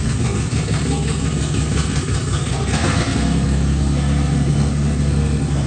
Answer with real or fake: fake